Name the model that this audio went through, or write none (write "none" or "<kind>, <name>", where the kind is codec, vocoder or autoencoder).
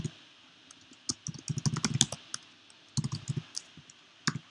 none